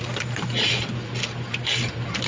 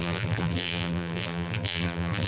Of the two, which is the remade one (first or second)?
second